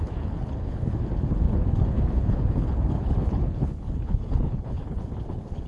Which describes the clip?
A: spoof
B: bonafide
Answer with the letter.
A